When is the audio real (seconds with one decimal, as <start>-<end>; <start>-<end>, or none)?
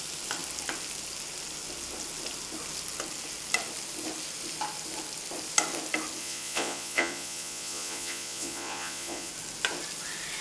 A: 0.0-6.2; 9.3-10.4